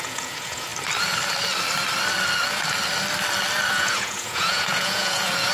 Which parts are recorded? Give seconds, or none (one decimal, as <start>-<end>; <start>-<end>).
0.7-3.7